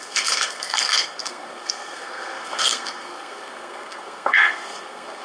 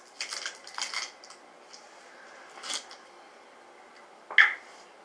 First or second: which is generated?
first